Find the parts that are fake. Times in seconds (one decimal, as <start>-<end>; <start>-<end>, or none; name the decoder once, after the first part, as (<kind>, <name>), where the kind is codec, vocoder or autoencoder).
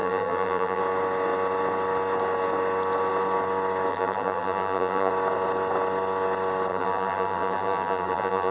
0.0-0.8 (vocoder, BigVGAN v2); 3.9-5.1; 6.7-8.5